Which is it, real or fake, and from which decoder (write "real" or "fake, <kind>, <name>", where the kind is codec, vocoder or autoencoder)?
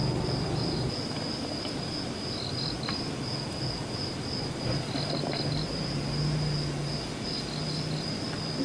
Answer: real